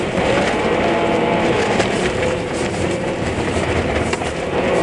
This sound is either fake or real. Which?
fake